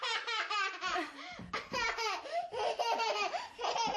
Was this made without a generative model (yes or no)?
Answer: yes